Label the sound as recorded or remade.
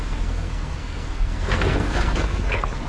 remade